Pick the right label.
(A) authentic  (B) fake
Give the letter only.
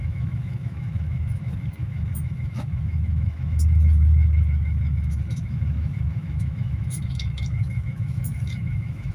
B